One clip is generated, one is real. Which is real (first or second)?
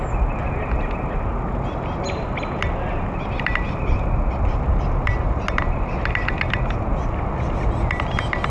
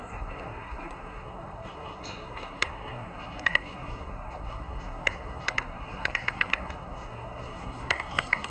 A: first